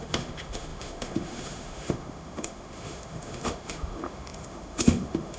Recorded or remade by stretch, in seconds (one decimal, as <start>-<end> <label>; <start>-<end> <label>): 0.0-5.4 remade

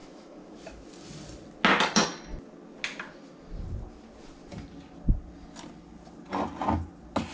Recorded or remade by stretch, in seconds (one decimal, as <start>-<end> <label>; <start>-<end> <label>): 0.0-0.9 remade; 0.9-7.3 recorded

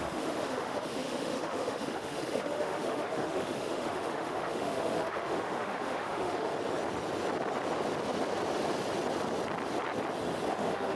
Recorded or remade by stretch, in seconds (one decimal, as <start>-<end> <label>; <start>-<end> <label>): 0.0-6.5 remade; 6.5-10.5 recorded; 10.5-11.0 remade